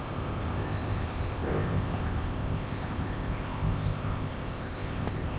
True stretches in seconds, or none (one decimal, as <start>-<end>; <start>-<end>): none